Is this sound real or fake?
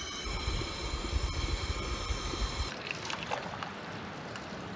real